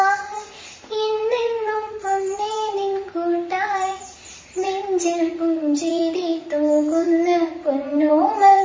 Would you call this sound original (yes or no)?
no